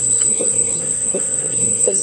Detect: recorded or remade remade